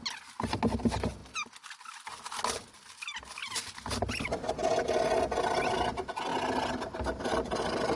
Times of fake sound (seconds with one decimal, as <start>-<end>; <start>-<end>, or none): none